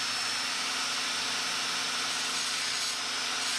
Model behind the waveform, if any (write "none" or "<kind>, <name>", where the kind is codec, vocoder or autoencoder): none